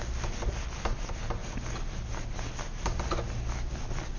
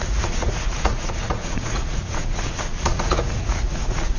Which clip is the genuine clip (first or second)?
first